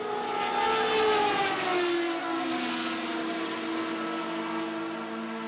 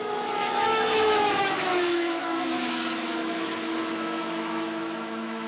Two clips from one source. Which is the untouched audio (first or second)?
first